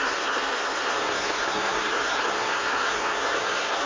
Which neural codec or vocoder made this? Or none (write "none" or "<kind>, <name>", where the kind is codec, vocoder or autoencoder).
codec, SNAC